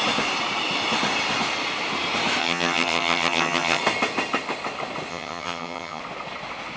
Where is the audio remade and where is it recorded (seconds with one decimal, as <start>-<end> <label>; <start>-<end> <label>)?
0.0-2.4 recorded; 2.4-3.8 remade; 3.8-5.1 recorded; 5.1-6.0 remade; 6.0-6.8 recorded